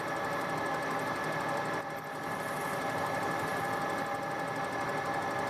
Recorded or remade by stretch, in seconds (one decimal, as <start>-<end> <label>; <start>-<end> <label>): 0.0-5.5 recorded